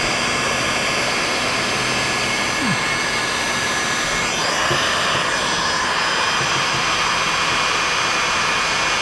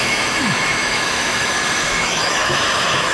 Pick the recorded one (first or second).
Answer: first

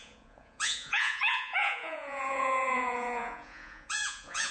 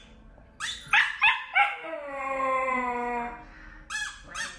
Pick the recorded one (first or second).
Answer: second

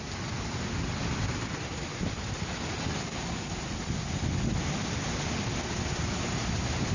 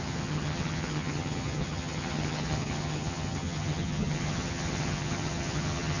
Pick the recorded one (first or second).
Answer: first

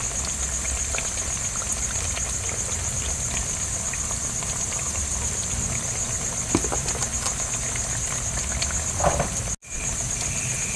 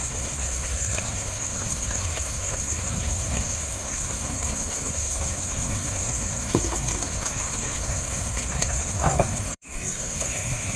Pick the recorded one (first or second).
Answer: first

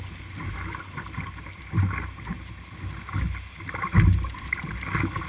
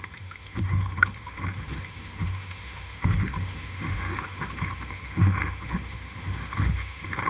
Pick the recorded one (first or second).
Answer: first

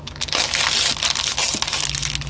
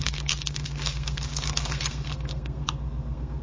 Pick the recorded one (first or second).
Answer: first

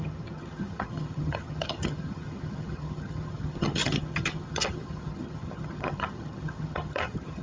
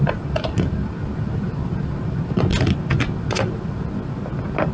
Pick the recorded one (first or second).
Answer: second